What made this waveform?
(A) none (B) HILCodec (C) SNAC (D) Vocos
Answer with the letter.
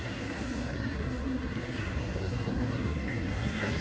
C